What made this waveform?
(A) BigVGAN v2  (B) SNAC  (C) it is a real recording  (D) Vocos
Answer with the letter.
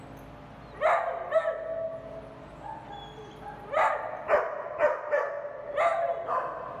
C